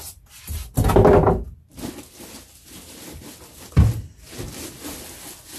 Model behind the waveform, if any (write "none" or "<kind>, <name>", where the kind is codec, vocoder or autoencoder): none